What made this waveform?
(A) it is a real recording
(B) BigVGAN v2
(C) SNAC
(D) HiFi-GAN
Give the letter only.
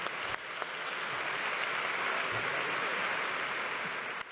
A